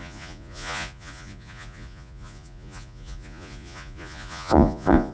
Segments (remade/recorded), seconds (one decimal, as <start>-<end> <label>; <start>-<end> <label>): 0.0-5.1 remade

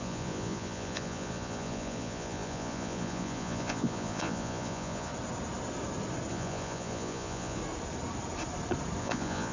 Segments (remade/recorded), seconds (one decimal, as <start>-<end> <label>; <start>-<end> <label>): 0.0-5.1 remade; 5.1-6.3 recorded; 6.3-7.6 remade; 7.6-9.0 recorded; 9.0-9.5 remade